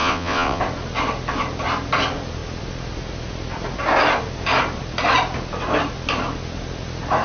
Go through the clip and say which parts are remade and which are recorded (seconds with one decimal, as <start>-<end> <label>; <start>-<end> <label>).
0.0-0.6 remade; 0.6-7.2 recorded